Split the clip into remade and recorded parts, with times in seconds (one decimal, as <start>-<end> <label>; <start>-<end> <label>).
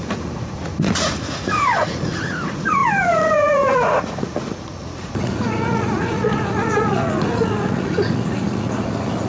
0.0-9.3 remade